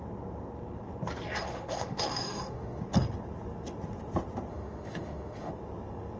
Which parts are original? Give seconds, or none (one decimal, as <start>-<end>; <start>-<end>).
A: 0.0-1.5; 2.8-4.5; 5.5-6.2